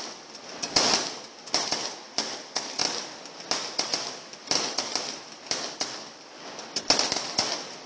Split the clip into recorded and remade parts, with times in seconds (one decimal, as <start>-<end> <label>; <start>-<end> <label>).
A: 0.0-7.9 recorded

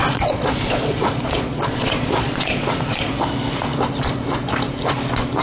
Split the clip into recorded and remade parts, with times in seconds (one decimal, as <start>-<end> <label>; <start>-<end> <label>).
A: 0.0-3.1 remade; 3.1-5.4 recorded

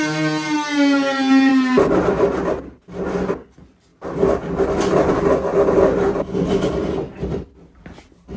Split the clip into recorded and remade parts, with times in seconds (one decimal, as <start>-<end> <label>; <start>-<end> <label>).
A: 0.0-8.4 recorded

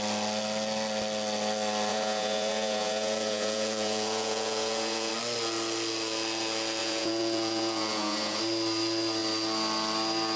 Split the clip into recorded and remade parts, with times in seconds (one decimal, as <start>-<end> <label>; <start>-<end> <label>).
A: 0.0-1.9 recorded; 1.9-5.1 remade; 5.1-6.8 recorded; 6.8-8.4 remade; 8.4-10.4 recorded

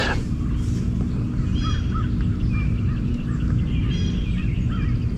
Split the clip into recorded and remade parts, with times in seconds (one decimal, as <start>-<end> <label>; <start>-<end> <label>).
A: 0.0-5.2 recorded

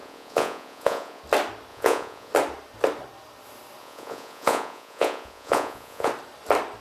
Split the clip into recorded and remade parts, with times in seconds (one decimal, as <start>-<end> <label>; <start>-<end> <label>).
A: 0.0-1.2 remade; 1.2-1.7 recorded; 1.7-2.3 remade; 2.3-3.8 recorded; 3.8-6.1 remade; 6.1-6.8 recorded

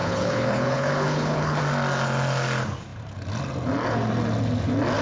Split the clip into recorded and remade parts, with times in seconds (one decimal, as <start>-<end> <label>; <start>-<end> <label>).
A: 0.0-1.6 remade; 1.6-5.0 recorded

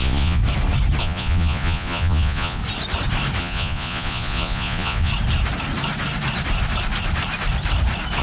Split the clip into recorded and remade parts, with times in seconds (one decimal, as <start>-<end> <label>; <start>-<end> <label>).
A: 0.0-0.4 remade; 0.4-1.0 recorded; 1.0-2.6 remade; 2.6-3.4 recorded; 3.4-5.1 remade; 5.1-8.2 recorded